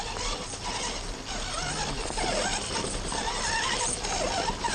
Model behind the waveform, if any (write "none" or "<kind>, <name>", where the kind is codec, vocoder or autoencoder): none